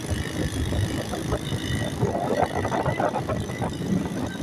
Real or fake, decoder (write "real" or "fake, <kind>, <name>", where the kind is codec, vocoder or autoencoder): real